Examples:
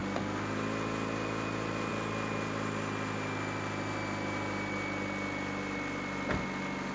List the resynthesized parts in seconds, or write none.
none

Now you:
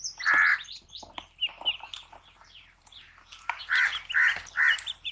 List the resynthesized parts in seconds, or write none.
0.5-3.6 (vocoder, BigVGAN v2)